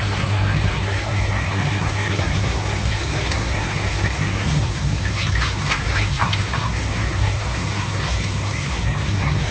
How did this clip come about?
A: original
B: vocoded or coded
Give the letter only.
B